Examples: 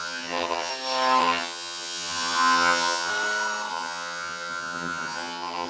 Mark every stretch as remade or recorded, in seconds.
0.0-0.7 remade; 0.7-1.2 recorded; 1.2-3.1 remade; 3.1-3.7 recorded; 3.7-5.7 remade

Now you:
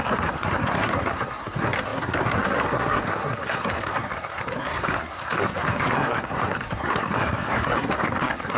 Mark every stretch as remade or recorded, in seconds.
0.0-8.6 remade

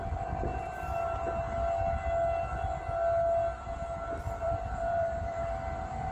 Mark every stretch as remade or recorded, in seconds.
0.0-0.5 remade; 0.5-4.2 recorded; 4.2-6.1 remade

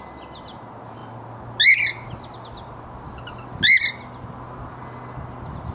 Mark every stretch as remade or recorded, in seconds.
0.0-5.7 recorded

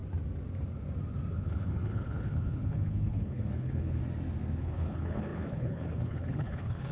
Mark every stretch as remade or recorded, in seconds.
0.0-1.3 recorded; 1.3-4.0 remade; 4.0-4.6 recorded; 4.6-6.9 remade

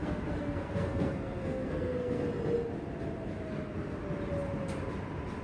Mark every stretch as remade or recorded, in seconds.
0.0-2.2 remade; 2.2-5.4 recorded